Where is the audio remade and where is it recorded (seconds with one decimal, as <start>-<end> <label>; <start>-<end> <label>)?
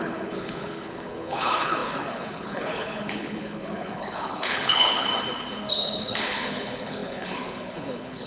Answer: 0.0-5.1 remade; 5.1-5.7 recorded; 5.7-8.3 remade